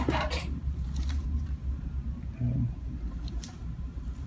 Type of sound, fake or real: fake